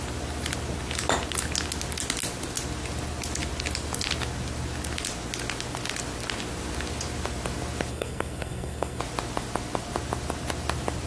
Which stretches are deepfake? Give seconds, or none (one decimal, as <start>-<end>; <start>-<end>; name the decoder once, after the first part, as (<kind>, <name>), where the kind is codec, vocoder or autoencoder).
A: 7.9-9.0 (codec, SNAC)

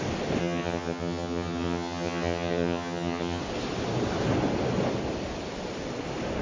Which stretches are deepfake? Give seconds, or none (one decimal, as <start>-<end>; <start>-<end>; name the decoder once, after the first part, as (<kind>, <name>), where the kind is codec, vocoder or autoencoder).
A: 0.4-3.4 (vocoder, HiFi-GAN)

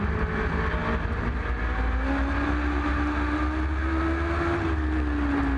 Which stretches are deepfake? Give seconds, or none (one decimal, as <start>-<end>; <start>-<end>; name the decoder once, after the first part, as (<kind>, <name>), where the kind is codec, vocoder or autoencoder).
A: none

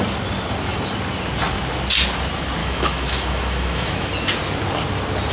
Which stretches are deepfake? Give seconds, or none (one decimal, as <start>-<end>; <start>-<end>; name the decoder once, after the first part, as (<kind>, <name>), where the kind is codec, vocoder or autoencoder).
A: 2.6-4.1 (autoencoder, DAC-VAE)

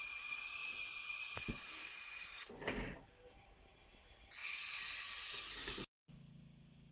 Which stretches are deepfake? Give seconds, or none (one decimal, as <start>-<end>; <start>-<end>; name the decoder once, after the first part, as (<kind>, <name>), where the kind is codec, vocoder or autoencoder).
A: none

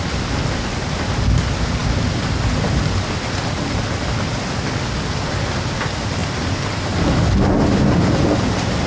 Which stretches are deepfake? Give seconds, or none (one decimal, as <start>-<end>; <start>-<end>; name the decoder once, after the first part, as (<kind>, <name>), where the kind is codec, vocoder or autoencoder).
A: none

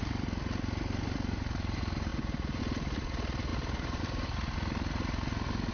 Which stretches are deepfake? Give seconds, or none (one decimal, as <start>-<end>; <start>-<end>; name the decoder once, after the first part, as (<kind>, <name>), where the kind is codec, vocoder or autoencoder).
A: 2.1-2.6 (vocoder, Vocos)

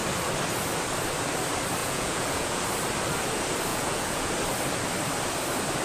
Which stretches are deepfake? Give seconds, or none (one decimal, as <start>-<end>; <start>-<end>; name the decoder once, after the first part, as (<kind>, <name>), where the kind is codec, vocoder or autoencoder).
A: 1.8-2.6 (vocoder, Vocos); 3.7-4.3